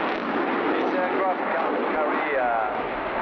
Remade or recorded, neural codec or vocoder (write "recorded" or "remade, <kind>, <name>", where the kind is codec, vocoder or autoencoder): recorded